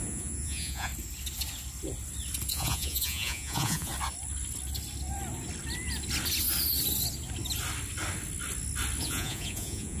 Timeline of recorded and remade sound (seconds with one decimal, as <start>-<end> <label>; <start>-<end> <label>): 0.0-0.9 remade; 0.9-2.5 recorded; 2.5-3.9 remade; 3.9-9.0 recorded; 9.0-10.0 remade